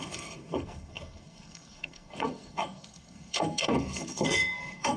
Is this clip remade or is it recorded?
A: remade